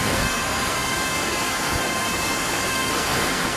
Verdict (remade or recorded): remade